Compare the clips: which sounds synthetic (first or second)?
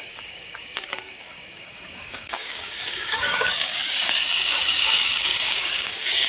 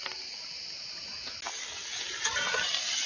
first